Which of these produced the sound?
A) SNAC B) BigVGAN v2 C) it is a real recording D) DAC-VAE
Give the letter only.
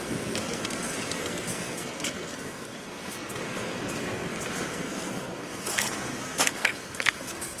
A